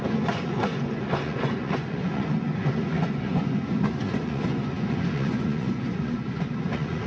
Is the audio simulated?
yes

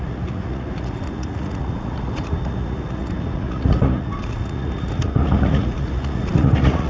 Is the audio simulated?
yes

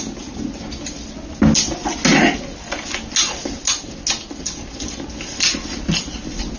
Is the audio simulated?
no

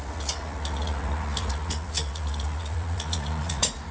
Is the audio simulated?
yes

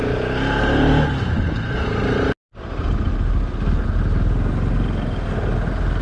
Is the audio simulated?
no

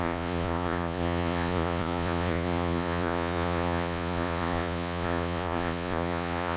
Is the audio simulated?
yes